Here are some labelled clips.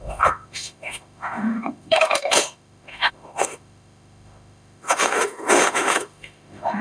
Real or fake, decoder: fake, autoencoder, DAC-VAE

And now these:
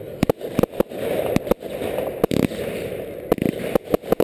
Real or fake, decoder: real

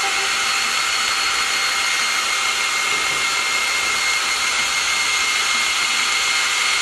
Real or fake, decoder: real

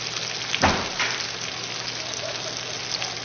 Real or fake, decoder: real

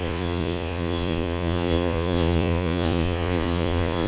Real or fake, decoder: fake, vocoder, Vocos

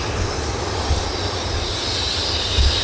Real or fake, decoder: real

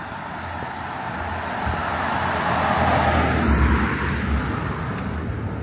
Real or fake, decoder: real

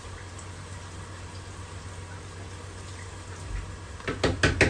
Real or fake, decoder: real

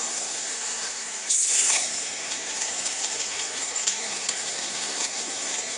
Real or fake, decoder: fake, codec, SNAC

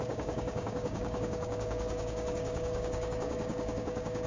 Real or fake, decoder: fake, codec, DAC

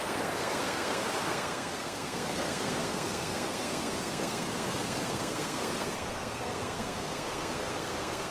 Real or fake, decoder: fake, codec, SNAC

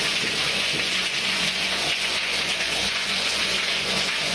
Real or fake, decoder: fake, vocoder, Vocos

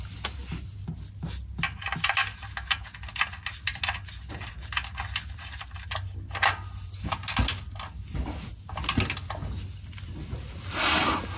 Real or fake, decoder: real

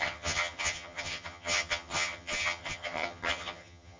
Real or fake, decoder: fake, vocoder, HiFi-GAN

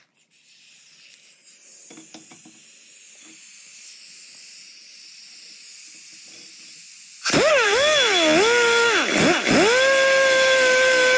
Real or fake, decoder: real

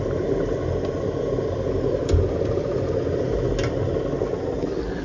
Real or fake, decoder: real